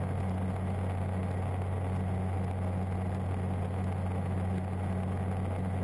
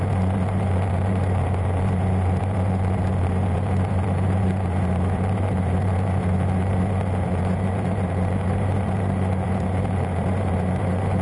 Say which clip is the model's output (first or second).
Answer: second